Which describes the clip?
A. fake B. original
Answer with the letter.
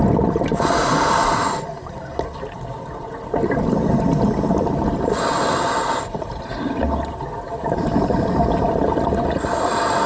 B